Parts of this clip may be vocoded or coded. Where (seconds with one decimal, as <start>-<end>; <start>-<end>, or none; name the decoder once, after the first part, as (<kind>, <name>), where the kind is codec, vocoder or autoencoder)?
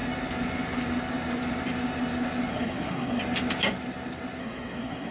2.5-3.2 (codec, SNAC); 4.4-5.1